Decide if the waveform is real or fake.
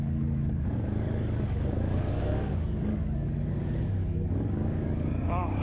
fake